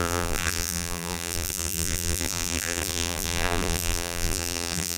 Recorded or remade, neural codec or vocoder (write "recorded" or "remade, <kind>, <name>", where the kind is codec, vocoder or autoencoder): remade, vocoder, BigVGAN v2